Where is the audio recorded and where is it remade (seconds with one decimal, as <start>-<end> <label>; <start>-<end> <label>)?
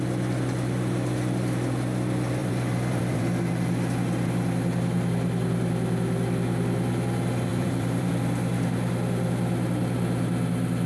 0.0-2.4 recorded; 2.4-3.2 remade; 3.2-7.5 recorded; 7.5-8.1 remade; 8.1-10.9 recorded